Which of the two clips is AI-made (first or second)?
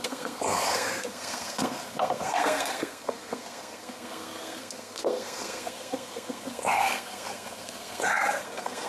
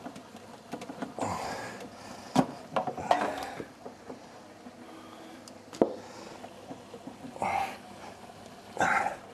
first